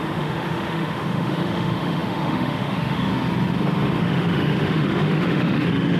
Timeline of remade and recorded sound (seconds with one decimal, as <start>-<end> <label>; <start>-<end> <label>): 0.0-3.1 remade; 3.1-4.0 recorded; 4.0-6.0 remade